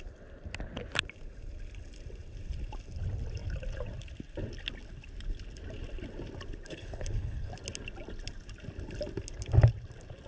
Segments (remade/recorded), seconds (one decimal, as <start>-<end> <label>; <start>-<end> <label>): 0.0-6.7 recorded; 6.7-7.5 remade; 7.5-10.3 recorded